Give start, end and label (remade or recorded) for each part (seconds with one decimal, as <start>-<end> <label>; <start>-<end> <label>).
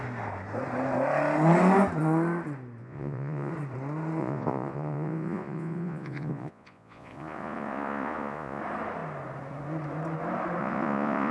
0.0-2.8 recorded; 2.8-3.5 remade; 3.5-4.2 recorded; 4.2-8.6 remade; 8.6-10.6 recorded; 10.6-11.3 remade